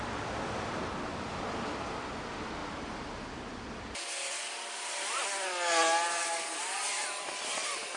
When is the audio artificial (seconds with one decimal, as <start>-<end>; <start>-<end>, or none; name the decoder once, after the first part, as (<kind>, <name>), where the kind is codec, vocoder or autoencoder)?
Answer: none

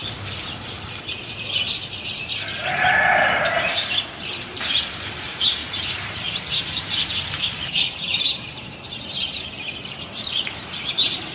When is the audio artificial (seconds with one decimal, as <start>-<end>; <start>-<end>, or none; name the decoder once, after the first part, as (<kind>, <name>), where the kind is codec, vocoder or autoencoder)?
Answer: 3.1-11.3 (vocoder, BigVGAN v2)

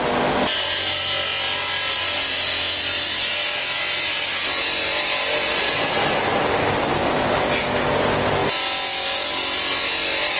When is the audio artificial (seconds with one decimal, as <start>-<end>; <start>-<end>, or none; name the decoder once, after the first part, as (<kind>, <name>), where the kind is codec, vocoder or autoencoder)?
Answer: 6.0-6.5 (vocoder, BigVGAN v2)